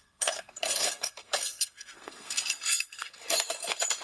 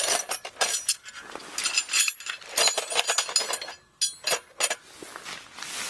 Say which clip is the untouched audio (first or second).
second